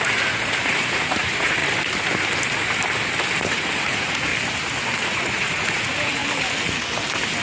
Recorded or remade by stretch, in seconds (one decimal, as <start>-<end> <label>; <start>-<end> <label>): 0.0-1.6 remade; 1.6-3.4 recorded; 3.4-4.3 remade; 4.3-5.0 recorded; 5.0-6.2 remade; 6.2-7.4 recorded